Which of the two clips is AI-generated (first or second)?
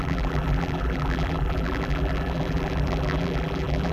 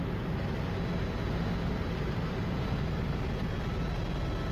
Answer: first